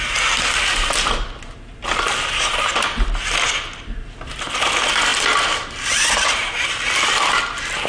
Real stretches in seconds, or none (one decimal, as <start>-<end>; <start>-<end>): 0.0-7.9